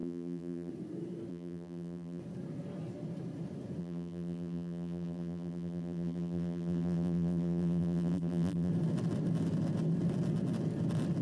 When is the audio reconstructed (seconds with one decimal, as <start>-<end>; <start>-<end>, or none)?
0.0-0.7; 1.3-2.2; 3.8-8.7